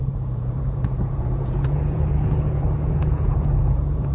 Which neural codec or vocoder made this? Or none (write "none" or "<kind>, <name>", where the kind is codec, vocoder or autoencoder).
vocoder, Vocos